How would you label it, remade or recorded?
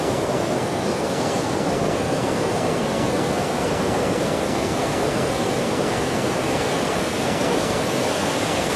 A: remade